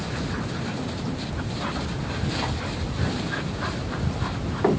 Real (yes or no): yes